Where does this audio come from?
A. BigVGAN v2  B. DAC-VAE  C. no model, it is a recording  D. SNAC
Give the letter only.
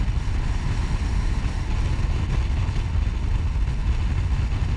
C